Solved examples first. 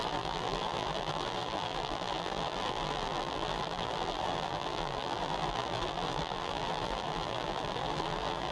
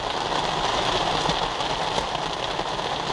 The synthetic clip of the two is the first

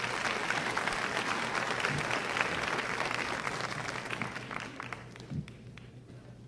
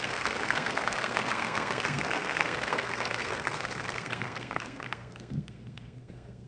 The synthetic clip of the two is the second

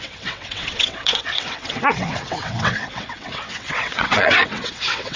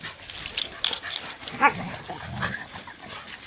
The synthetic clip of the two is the first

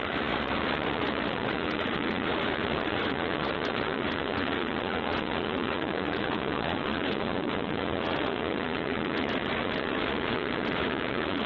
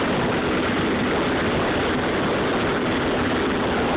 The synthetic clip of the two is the first